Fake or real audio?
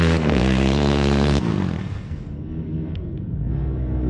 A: fake